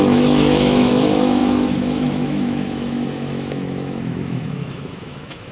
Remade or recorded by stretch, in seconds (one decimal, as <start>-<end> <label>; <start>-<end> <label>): 0.0-5.5 remade